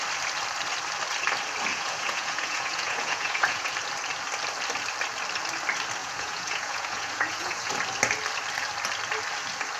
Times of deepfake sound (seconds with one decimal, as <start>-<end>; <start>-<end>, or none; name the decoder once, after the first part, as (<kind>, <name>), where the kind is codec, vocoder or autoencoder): 1.7-3.7 (vocoder, Vocos); 6.0-7.7